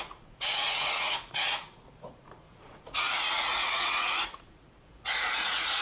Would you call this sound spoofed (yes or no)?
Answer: yes